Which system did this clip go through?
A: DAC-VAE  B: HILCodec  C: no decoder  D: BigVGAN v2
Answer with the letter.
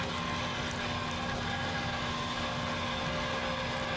C